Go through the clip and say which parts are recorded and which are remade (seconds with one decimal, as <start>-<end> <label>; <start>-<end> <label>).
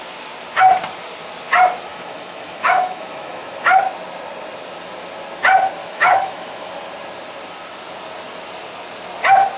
0.0-1.9 recorded; 1.9-3.8 remade; 3.8-5.8 recorded; 5.8-6.7 remade; 6.7-9.6 recorded